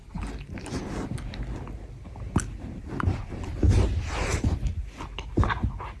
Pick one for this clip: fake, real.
real